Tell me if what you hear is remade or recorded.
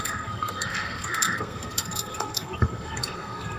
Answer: remade